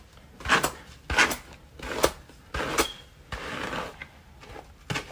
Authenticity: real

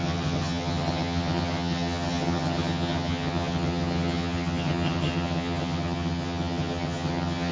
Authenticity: fake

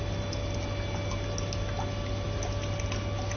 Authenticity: real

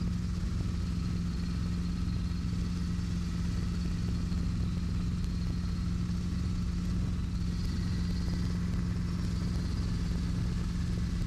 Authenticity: real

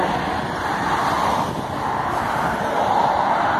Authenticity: real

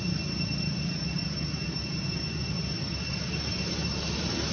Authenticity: real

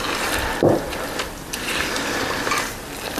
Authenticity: real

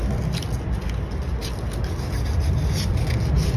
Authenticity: real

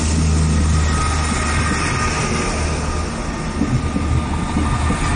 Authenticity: real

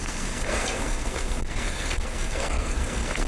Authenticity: fake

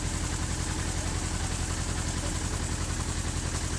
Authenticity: real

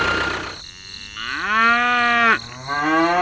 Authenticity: real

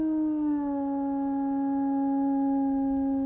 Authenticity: real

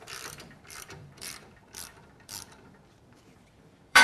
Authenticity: fake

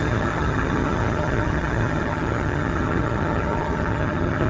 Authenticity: fake